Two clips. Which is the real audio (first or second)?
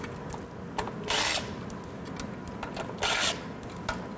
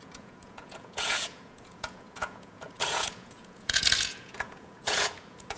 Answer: first